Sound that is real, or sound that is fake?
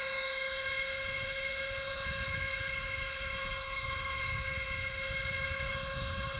fake